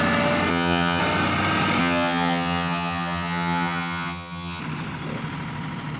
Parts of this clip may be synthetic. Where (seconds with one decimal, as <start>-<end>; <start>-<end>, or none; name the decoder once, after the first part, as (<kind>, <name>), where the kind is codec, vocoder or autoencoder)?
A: 0.5-1.0 (vocoder, HiFi-GAN); 1.8-4.6